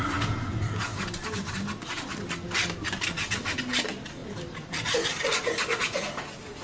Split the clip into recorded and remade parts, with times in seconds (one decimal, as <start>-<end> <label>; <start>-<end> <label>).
0.0-0.9 recorded; 0.9-1.5 remade; 1.5-6.6 recorded